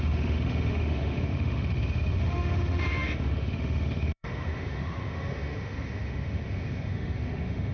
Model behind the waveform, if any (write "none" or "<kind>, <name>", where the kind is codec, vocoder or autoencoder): autoencoder, DAC-VAE